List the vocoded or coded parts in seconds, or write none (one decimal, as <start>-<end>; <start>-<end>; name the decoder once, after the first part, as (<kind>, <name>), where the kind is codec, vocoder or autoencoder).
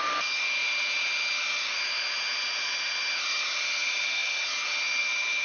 none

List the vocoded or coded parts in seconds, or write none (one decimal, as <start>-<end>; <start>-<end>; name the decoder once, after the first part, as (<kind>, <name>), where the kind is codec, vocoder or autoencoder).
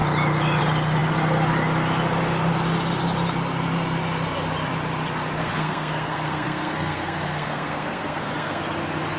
5.4-8.6 (codec, SNAC)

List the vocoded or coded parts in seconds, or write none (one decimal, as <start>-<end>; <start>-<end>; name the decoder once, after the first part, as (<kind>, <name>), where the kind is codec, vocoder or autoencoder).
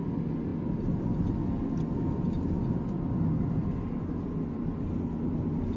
none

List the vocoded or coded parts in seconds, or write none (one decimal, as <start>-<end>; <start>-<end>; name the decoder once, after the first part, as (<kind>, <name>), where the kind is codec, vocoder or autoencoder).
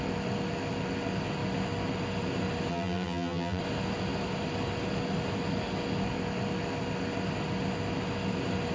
2.7-3.6 (vocoder, BigVGAN v2)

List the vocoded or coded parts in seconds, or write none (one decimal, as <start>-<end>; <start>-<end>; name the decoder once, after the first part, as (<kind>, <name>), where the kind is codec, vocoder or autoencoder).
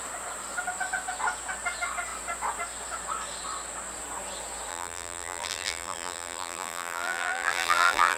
4.7-8.2 (vocoder, BigVGAN v2)